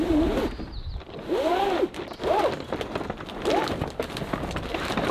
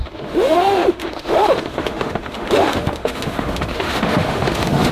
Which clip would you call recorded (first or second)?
first